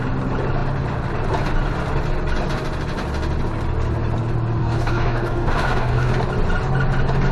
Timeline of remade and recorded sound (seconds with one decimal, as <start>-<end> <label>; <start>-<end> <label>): 0.0-4.6 recorded; 4.6-6.1 remade; 6.1-7.3 recorded